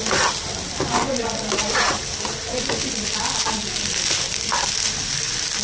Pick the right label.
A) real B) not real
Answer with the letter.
A